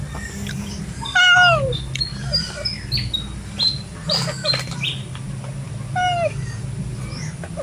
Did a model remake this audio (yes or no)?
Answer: no